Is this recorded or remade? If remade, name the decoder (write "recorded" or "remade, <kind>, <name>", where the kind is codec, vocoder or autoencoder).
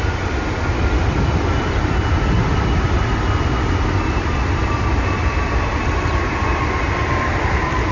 recorded